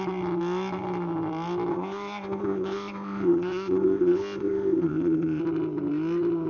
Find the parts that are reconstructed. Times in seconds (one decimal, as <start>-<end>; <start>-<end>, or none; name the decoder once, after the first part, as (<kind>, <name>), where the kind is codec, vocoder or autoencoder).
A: 1.7-5.4 (codec, ZipCodec)